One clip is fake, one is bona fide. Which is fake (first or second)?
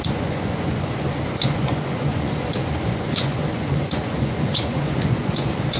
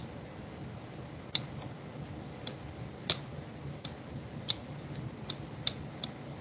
first